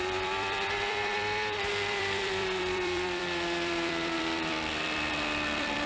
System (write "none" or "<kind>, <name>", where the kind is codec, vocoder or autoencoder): vocoder, BigVGAN v2